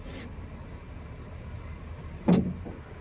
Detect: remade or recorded recorded